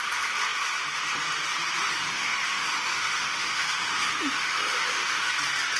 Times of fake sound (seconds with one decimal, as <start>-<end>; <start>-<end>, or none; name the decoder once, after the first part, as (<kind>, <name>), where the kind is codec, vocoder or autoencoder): 1.8-5.3 (autoencoder, DAC-VAE)